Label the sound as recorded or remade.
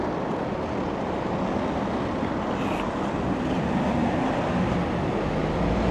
recorded